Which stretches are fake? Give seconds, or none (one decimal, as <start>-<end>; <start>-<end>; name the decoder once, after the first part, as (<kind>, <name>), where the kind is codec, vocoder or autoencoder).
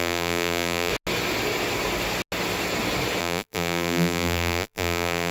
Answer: 0.0-0.9 (vocoder, BigVGAN v2); 3.2-5.3